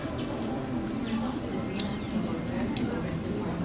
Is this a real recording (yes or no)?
yes